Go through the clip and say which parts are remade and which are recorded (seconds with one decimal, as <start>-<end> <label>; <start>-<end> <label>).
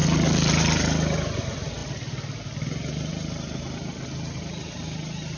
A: 0.0-0.8 remade; 0.8-5.4 recorded